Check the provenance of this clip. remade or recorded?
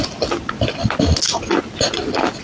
recorded